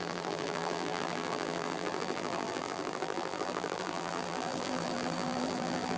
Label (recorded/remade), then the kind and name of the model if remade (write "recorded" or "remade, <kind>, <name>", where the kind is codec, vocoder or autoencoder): remade, vocoder, BigVGAN v2